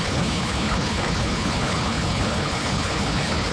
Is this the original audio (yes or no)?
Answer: no